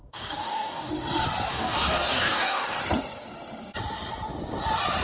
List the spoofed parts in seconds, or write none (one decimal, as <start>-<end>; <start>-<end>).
0.0-0.9; 1.5-2.8